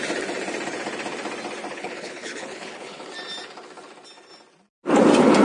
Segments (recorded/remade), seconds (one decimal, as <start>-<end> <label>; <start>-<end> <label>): 0.0-1.7 recorded; 1.7-3.1 remade; 3.1-5.4 recorded